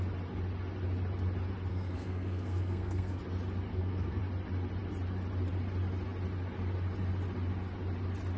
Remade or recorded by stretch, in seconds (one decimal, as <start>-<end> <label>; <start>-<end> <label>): 0.0-1.7 recorded; 1.7-3.2 remade; 3.2-3.7 recorded; 3.7-4.2 remade; 4.2-8.4 recorded